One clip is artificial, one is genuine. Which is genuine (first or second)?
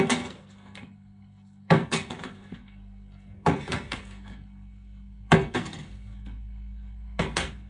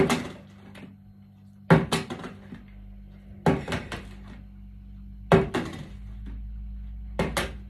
second